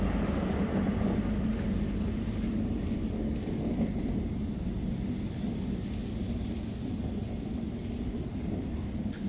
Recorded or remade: recorded